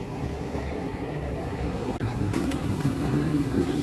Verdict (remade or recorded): remade